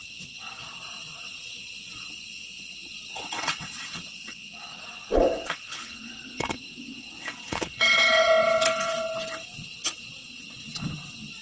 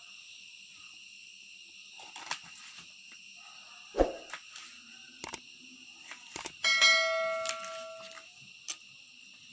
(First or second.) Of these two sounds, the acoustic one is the second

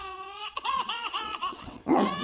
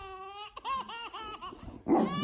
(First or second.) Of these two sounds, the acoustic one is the second